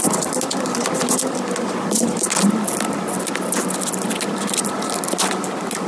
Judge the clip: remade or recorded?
recorded